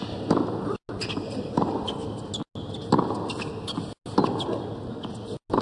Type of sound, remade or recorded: recorded